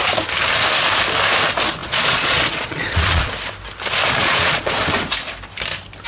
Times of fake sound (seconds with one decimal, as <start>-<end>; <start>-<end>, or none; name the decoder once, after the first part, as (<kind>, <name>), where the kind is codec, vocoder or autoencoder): 1.8-3.3 (vocoder, Vocos); 4.2-4.8